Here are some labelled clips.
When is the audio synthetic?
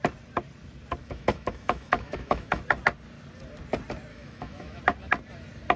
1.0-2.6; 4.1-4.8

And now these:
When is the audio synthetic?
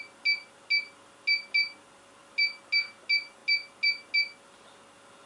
none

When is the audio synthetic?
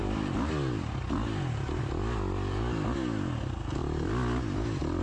none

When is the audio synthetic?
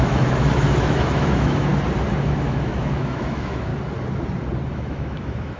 0.0-1.7; 2.2-3.7; 4.7-5.6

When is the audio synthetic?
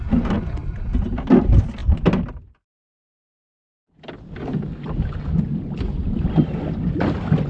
none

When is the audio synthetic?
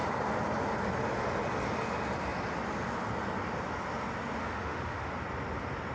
4.4-5.1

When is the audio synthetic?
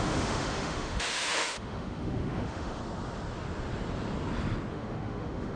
0.0-2.8; 4.7-5.6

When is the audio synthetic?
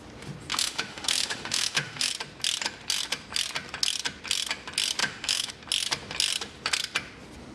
0.5-2.1; 5.0-5.5